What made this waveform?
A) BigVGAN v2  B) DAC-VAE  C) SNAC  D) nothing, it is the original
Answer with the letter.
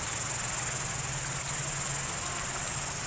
D